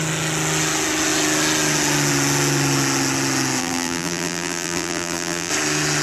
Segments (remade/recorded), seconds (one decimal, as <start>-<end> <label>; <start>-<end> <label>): 0.0-3.6 recorded; 3.6-5.5 remade; 5.5-6.0 recorded